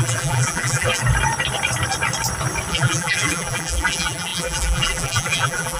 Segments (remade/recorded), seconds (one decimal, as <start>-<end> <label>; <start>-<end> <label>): 0.0-1.0 remade; 1.0-2.7 recorded; 2.7-5.8 remade